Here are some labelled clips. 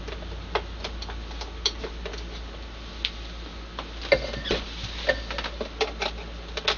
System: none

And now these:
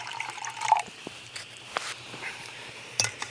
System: vocoder, BigVGAN v2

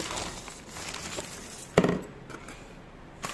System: none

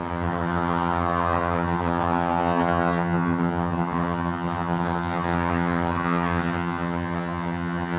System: vocoder, HiFi-GAN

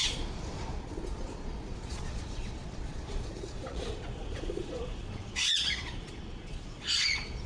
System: vocoder, Vocos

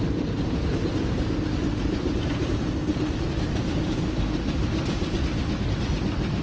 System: none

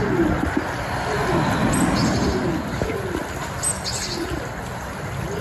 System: vocoder, BigVGAN v2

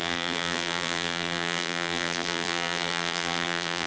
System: vocoder, BigVGAN v2